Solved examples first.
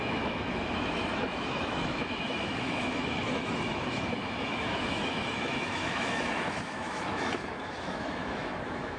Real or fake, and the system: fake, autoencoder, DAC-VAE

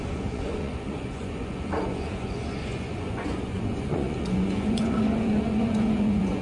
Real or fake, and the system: fake, vocoder, Vocos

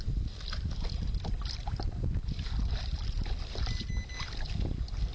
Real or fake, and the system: real